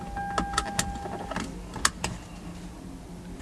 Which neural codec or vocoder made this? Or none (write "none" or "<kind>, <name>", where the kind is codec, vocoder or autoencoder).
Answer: none